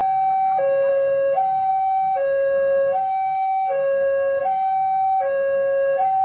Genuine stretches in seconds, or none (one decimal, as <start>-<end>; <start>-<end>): 0.0-0.9

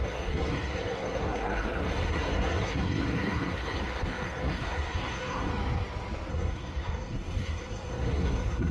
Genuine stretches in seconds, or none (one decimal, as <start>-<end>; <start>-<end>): 5.5-6.3